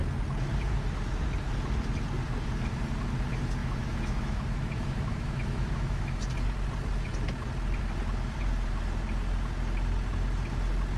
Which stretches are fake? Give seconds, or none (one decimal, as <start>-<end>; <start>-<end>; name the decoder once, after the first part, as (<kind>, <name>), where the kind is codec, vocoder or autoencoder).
3.6-6.2 (autoencoder, DAC-VAE)